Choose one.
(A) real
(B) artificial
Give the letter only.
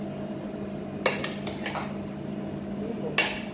A